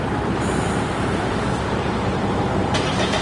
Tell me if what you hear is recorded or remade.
remade